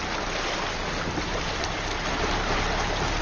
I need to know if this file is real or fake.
real